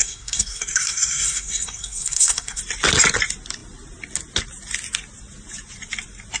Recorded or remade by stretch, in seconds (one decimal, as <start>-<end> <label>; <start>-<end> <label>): 0.0-2.6 remade; 2.6-6.4 recorded